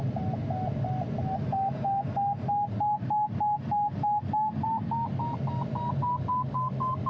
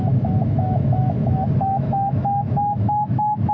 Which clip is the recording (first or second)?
first